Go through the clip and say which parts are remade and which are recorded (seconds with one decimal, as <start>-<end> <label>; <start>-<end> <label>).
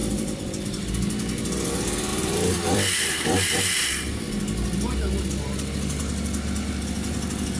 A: 0.0-0.8 remade; 0.8-2.1 recorded; 2.1-3.6 remade; 3.6-7.6 recorded